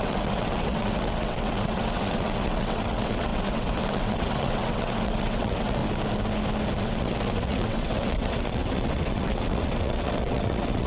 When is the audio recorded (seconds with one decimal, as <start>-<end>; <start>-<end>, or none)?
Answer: 5.8-6.8